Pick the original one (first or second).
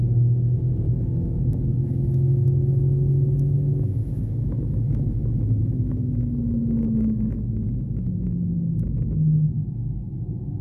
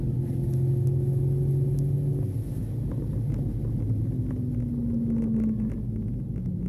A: second